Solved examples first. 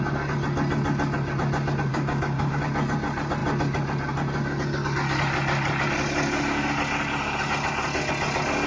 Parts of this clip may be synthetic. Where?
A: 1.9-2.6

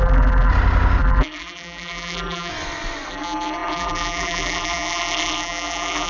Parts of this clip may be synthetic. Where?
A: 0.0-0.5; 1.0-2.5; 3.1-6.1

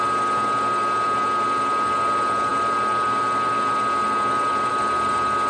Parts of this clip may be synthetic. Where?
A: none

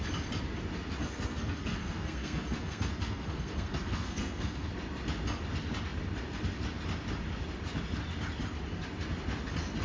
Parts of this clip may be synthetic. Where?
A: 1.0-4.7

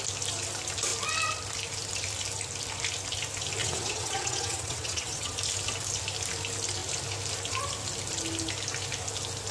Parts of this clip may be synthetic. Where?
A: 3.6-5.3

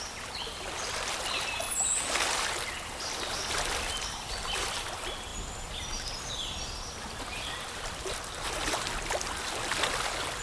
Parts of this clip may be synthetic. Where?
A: none